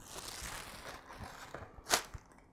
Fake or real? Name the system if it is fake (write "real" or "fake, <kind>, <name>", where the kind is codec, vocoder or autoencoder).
real